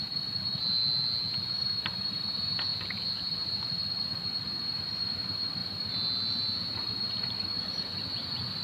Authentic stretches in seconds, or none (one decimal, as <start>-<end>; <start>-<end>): 0.0-8.6